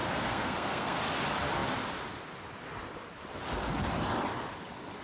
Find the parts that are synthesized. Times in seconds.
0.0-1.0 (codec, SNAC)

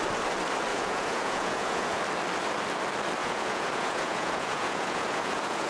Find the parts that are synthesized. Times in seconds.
0.7-2.0 (vocoder, Vocos); 3.2-5.7

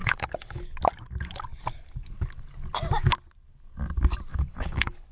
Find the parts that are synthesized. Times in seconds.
0.0-0.6 (codec, HILCodec); 4.3-5.1

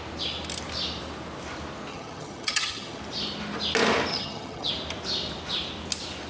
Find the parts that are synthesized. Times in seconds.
1.9-3.0 (vocoder, HiFi-GAN); 4.1-4.7